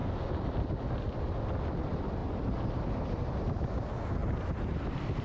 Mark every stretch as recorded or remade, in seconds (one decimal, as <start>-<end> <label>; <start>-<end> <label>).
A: 0.0-0.6 remade; 0.6-2.2 recorded; 2.2-3.7 remade; 3.7-4.2 recorded; 4.2-5.2 remade